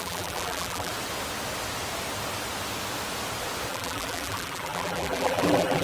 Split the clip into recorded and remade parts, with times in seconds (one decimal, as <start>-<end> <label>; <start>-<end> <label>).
0.0-0.9 remade; 0.9-3.7 recorded; 3.7-5.8 remade